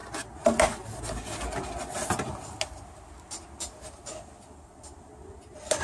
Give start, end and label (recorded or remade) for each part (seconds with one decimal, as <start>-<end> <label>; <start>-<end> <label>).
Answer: 0.0-5.8 recorded